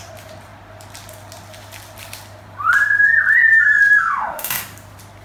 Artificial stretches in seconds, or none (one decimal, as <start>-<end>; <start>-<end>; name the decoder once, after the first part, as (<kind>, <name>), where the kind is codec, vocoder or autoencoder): 4.0-4.6 (autoencoder, DAC-VAE)